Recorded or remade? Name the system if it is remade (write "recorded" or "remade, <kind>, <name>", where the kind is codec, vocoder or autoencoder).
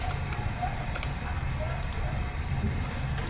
recorded